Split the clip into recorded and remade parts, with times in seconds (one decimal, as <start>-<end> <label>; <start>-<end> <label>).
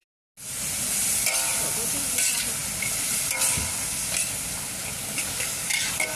0.0-5.0 recorded; 5.0-5.7 remade; 5.7-6.2 recorded